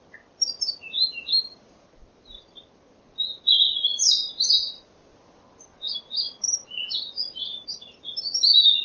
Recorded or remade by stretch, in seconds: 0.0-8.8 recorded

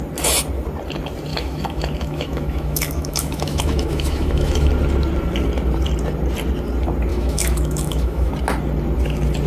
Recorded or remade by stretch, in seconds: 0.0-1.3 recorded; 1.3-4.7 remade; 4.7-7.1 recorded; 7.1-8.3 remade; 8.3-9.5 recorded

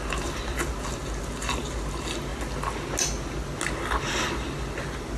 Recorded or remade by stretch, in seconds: 0.0-5.2 recorded

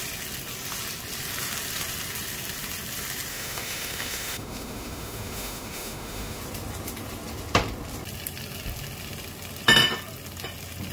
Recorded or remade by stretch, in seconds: 0.0-3.3 recorded; 3.3-6.4 remade; 6.4-10.9 recorded

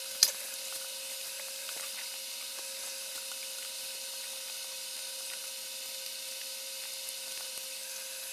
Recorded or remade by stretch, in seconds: 0.0-8.3 recorded